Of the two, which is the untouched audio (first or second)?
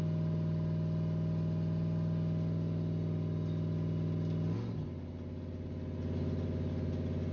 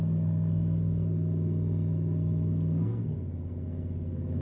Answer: first